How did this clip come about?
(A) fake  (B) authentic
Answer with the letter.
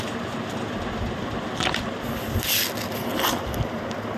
B